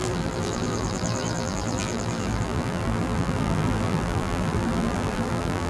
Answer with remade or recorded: remade